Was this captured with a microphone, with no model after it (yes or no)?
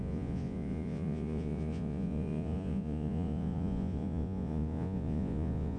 no